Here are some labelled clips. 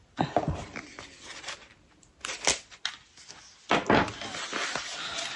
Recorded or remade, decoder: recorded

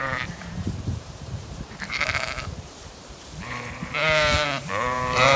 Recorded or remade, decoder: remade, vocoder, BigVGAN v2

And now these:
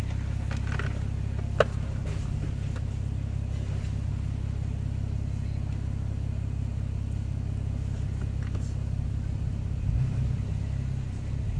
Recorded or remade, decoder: recorded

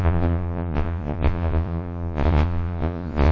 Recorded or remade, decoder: remade, vocoder, Vocos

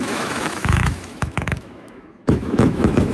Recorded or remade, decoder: remade, autoencoder, DAC-VAE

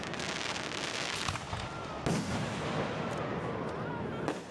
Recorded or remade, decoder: recorded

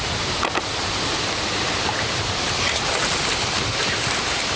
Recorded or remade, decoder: recorded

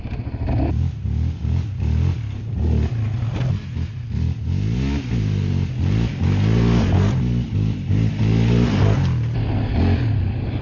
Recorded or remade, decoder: recorded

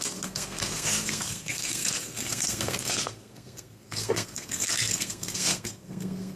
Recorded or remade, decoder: remade, codec, SNAC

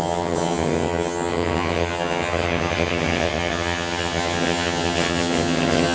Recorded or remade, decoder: remade, vocoder, HiFi-GAN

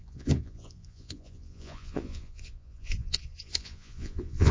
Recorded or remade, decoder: remade, vocoder, Vocos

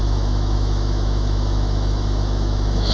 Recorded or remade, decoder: remade, autoencoder, DAC-VAE